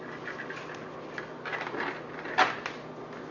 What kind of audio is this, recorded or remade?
recorded